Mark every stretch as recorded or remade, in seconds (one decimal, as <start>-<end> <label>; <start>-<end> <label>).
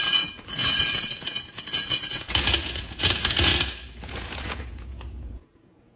0.0-3.5 remade; 3.5-4.0 recorded; 4.0-6.0 remade